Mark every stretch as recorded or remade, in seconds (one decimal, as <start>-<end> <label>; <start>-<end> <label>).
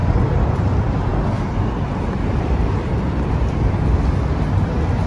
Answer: 0.0-0.5 remade; 0.5-5.1 recorded